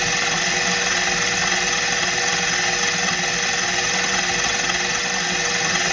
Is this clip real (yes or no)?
yes